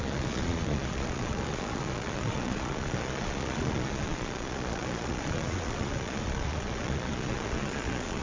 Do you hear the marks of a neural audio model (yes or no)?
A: yes